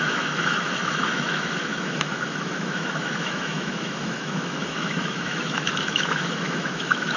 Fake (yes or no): yes